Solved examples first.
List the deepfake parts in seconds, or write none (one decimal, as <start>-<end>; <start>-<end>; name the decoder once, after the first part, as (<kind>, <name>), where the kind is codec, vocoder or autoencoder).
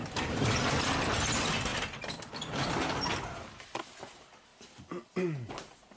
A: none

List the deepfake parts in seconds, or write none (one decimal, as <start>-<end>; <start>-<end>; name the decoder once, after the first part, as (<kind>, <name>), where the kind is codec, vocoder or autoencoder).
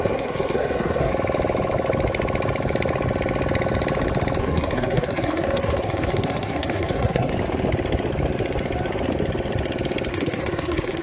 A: 0.0-1.1 (codec, SNAC); 4.4-7.3; 10.1-11.0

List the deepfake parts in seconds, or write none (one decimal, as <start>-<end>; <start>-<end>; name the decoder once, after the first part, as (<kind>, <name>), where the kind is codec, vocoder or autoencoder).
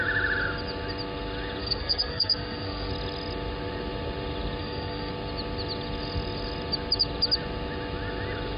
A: 1.6-2.9 (codec, SNAC); 4.6-5.1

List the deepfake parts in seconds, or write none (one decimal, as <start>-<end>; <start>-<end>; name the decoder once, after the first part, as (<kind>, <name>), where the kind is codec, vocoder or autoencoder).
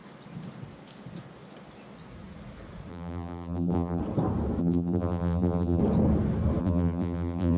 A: 2.9-4.0 (vocoder, BigVGAN v2); 4.6-5.8; 6.6-7.6